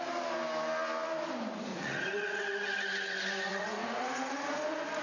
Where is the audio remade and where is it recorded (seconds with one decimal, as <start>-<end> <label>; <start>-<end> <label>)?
0.0-1.7 recorded; 1.7-2.4 remade; 2.4-3.5 recorded; 3.5-5.0 remade